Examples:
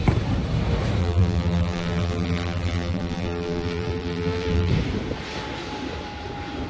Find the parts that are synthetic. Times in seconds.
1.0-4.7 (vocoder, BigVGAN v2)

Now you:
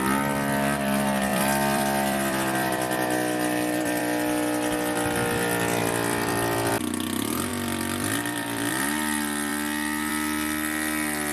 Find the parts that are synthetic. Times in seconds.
1.3-4.0 (vocoder, BigVGAN v2); 5.8-6.7; 7.5-8.7

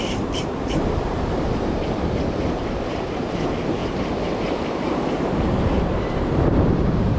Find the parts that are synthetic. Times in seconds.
0.0-1.5 (vocoder, BigVGAN v2); 2.3-7.2

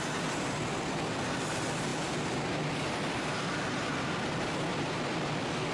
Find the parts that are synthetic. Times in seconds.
none